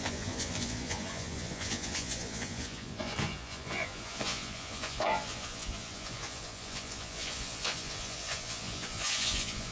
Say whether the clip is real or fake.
fake